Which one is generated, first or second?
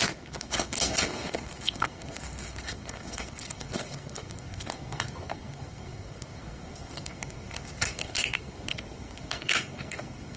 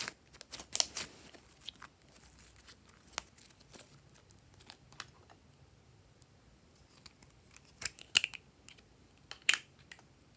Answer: first